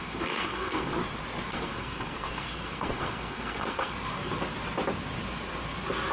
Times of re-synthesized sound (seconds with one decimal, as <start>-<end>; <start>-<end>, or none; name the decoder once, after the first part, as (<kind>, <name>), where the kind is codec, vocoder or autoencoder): 0.0-0.9 (codec, SNAC); 1.5-3.9